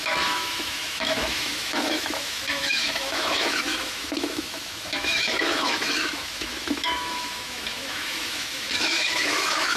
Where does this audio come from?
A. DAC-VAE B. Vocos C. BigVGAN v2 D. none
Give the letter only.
A